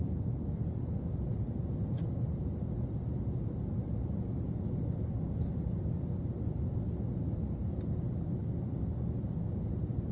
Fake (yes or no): no